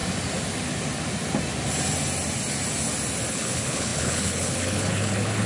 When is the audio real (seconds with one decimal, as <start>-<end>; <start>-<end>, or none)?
0.0-3.3